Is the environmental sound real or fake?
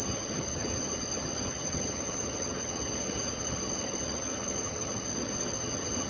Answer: fake